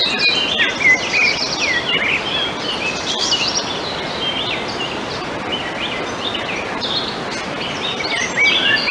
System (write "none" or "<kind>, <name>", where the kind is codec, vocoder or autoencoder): none